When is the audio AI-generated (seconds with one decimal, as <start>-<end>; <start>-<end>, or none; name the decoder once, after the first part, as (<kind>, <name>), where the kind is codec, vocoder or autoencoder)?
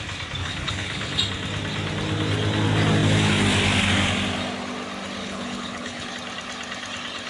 0.4-1.2 (codec, HILCodec); 5.2-6.1